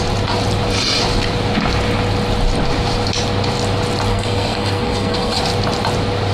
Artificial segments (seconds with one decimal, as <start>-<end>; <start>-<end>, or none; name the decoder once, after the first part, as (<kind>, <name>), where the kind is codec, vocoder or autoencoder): 4.1-5.4 (codec, SNAC)